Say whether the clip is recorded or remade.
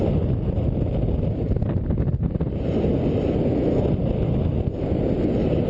recorded